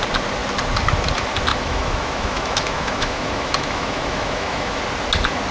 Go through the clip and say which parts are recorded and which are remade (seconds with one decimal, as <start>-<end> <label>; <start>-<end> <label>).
0.0-1.5 recorded; 1.5-4.8 remade; 4.8-5.5 recorded